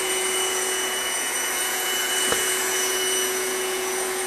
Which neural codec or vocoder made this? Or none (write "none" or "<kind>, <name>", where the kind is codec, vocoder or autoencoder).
vocoder, Vocos